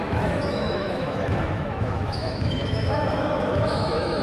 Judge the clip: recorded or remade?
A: remade